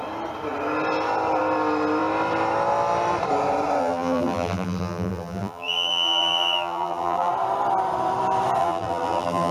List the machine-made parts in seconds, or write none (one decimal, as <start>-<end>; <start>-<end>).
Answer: 3.8-7.3; 8.6-9.5